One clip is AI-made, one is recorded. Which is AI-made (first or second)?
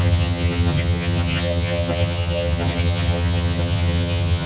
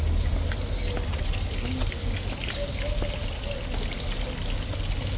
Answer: first